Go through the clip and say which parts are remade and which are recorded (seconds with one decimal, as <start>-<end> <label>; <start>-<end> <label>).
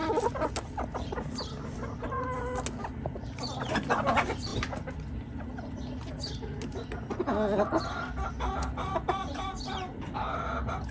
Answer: 0.0-10.9 recorded